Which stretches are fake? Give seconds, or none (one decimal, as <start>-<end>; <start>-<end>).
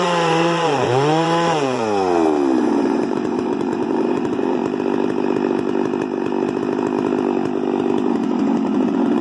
0.0-1.8; 2.6-4.6; 8.1-9.2